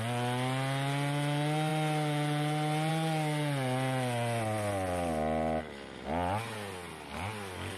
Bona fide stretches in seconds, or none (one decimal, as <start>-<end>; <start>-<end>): 0.0-7.8